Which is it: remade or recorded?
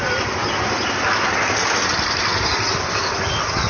recorded